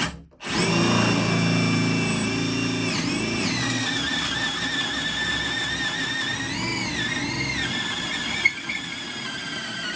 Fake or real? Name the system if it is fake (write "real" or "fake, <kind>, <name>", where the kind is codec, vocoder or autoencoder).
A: real